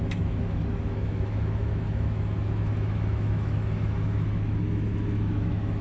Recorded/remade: remade